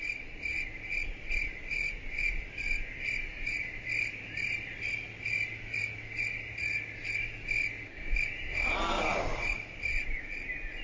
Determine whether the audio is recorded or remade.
recorded